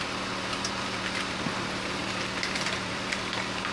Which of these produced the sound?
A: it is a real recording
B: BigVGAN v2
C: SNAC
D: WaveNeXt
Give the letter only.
B